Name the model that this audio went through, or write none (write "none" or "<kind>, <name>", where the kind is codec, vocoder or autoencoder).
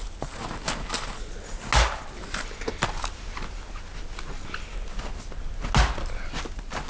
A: none